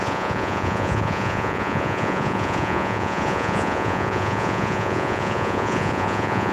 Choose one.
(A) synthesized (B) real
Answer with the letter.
A